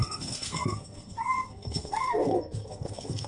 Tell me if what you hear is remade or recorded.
remade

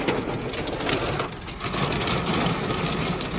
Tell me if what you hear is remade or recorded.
recorded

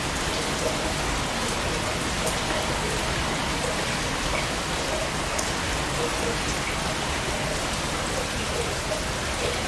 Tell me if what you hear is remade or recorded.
recorded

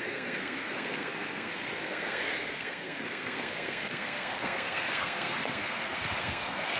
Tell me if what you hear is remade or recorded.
remade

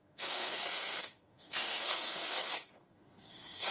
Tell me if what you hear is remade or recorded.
remade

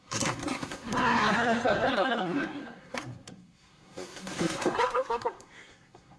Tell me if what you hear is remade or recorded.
remade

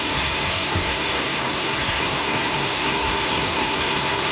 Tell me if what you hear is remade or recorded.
remade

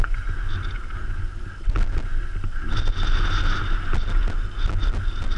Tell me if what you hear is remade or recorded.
recorded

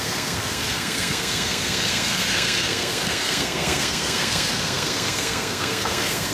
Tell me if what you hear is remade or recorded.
remade